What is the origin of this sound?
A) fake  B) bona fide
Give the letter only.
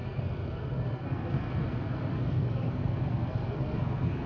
A